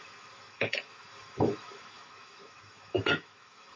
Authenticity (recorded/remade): remade